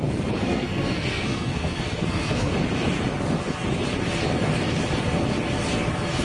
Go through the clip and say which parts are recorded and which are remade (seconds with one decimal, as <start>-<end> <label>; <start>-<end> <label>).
0.0-0.4 recorded; 0.4-2.5 remade; 2.5-6.2 recorded